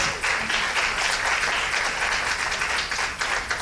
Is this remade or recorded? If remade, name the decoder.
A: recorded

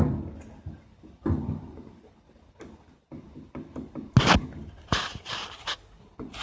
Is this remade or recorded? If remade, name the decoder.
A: recorded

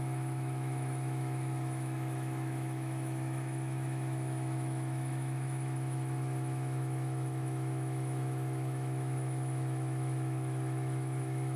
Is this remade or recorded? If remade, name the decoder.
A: remade, autoencoder, DAC-VAE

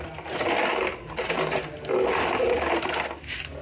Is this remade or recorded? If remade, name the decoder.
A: recorded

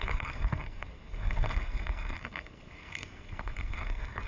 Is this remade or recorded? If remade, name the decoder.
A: remade, codec, SNAC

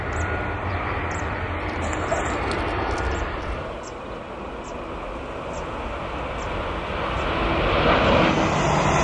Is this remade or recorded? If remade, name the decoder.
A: recorded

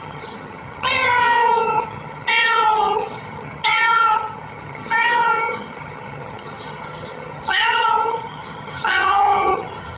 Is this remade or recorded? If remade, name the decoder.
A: remade, vocoder, HiFi-GAN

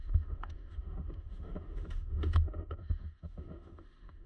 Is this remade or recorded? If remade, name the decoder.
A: remade, autoencoder, DAC-VAE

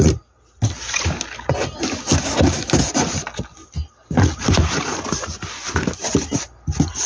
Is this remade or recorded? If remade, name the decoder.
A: recorded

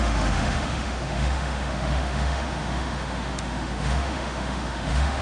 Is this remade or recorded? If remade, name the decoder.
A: remade, autoencoder, DAC-VAE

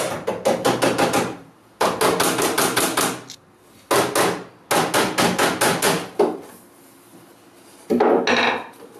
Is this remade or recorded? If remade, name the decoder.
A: recorded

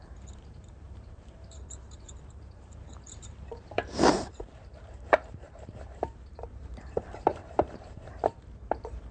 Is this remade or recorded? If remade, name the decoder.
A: remade, vocoder, BigVGAN v2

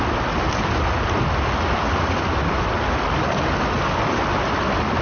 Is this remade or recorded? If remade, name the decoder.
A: recorded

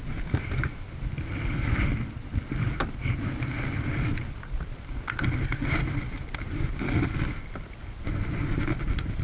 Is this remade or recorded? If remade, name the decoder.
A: recorded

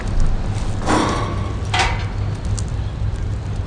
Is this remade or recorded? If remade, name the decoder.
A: recorded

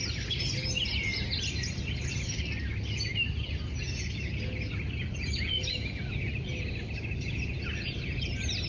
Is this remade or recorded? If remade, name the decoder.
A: recorded